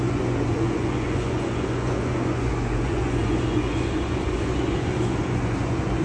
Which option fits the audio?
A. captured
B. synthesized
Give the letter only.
B